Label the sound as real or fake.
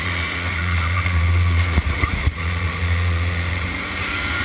fake